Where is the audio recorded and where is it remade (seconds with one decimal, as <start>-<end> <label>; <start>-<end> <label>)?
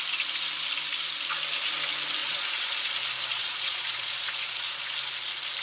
0.0-2.2 recorded; 2.2-2.9 remade; 2.9-3.3 recorded; 3.3-4.8 remade; 4.8-5.6 recorded